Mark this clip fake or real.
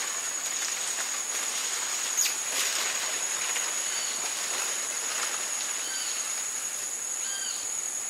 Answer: real